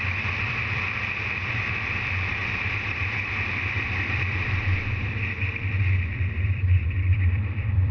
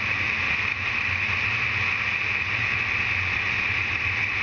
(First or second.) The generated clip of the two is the first